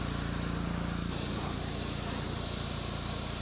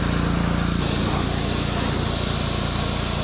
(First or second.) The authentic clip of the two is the second